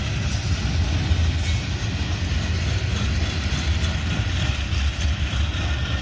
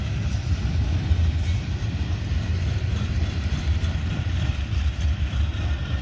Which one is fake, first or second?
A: second